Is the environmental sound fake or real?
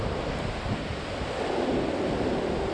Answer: real